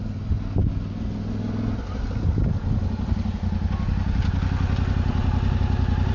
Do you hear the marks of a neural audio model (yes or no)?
no